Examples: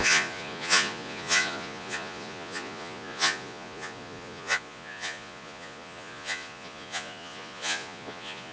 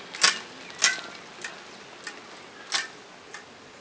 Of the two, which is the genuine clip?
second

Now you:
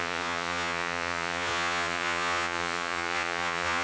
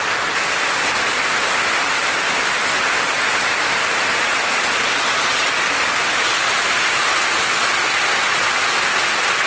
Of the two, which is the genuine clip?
second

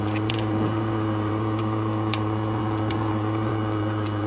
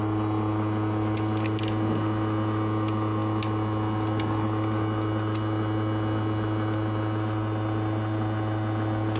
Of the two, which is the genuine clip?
second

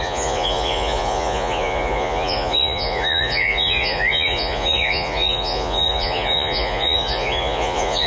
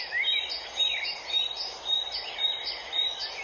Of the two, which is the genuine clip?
second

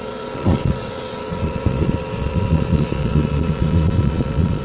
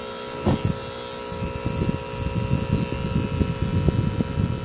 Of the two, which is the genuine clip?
second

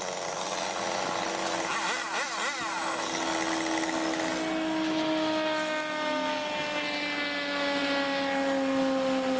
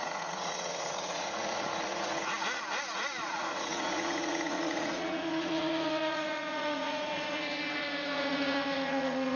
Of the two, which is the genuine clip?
first